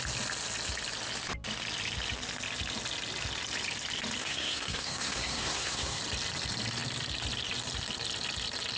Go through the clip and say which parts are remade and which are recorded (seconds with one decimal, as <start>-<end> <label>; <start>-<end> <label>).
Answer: 0.0-4.2 recorded; 4.2-6.0 remade; 6.0-8.8 recorded